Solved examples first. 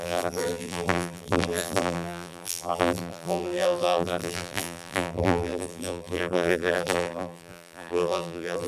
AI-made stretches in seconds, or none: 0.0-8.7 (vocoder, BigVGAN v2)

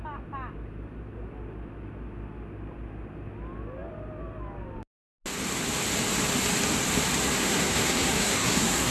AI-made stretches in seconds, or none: 7.4-8.9 (codec, SNAC)

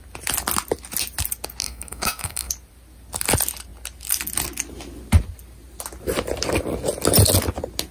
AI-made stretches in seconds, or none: 1.6-2.5 (codec, SNAC)

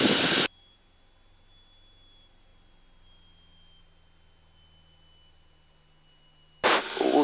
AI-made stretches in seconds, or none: none